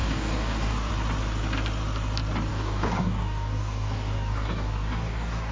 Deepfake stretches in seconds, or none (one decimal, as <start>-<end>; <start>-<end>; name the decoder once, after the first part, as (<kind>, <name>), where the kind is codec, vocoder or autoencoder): 0.0-0.9 (codec, DAC); 2.5-5.5